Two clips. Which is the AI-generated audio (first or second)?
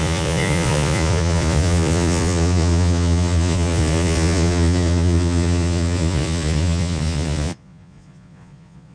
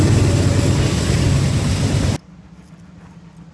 first